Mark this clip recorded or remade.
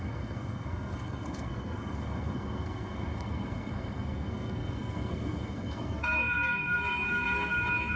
remade